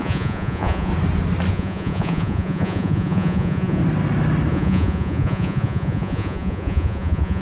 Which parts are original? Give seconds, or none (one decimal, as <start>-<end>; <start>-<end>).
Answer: 0.9-1.5; 3.8-4.5